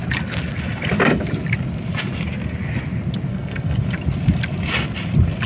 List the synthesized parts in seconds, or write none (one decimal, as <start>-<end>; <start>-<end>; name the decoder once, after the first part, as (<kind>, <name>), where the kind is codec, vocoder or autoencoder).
3.3-3.8 (codec, SNAC)